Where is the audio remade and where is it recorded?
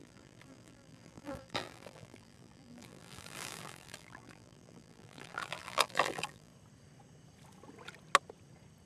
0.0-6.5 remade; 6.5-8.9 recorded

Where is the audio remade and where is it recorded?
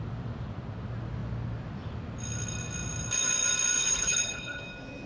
0.0-3.8 recorded; 3.8-4.6 remade; 4.6-5.1 recorded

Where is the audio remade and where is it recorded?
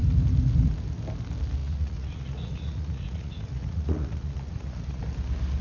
0.0-1.6 recorded; 1.6-5.0 remade; 5.0-5.6 recorded